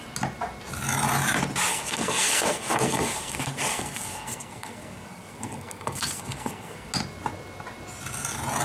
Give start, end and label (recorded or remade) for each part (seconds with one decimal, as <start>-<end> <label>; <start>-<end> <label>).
0.0-1.7 recorded; 1.7-6.9 remade; 6.9-8.6 recorded